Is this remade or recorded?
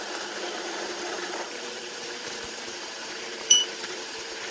remade